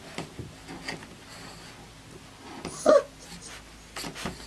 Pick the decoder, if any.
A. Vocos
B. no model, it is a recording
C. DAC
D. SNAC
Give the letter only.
B